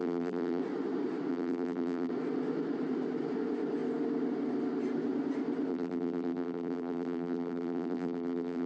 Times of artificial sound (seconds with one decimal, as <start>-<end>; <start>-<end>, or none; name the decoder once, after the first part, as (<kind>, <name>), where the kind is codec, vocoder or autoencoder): 0.0-0.6 (vocoder, BigVGAN v2); 1.3-2.1; 5.7-8.7